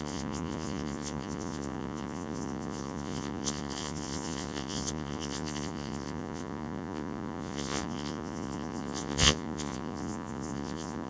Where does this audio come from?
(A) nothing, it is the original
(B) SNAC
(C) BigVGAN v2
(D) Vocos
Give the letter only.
D